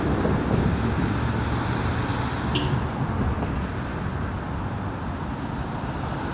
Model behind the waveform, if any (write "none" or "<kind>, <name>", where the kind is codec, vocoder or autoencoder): none